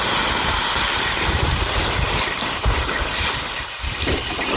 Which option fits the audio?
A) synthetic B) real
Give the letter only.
B